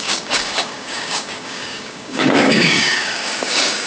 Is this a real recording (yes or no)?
no